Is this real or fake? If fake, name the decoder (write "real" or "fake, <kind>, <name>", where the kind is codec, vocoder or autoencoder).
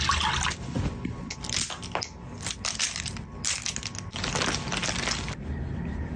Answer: real